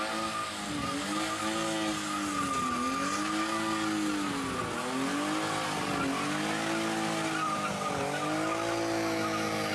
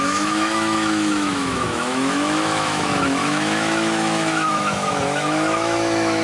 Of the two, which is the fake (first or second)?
second